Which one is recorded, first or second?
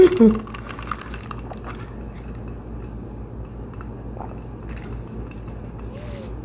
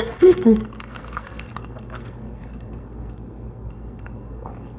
first